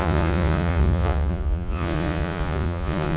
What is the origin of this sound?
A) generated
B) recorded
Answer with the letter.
A